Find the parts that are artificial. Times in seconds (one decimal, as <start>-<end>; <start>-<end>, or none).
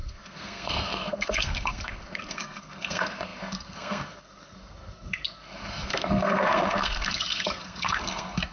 0.0-8.5